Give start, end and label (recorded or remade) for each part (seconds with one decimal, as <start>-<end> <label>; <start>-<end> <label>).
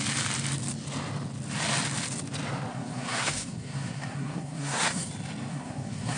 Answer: 0.0-2.7 recorded; 2.7-5.1 remade; 5.1-5.5 recorded; 5.5-6.2 remade